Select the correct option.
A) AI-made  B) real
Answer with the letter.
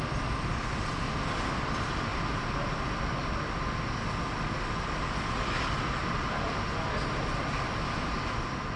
B